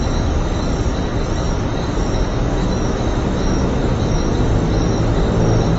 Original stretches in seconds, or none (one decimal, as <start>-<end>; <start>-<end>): 0.0-2.6; 4.3-5.8